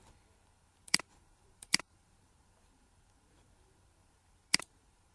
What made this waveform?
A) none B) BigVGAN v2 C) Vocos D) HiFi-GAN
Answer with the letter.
B